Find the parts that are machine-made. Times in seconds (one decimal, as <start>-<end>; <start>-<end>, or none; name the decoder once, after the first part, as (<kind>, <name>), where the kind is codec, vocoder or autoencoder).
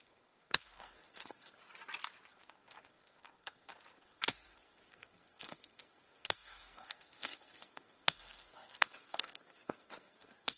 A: 0.0-1.6 (codec, SNAC); 2.3-10.6